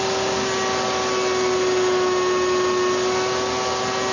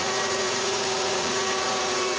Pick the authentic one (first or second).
first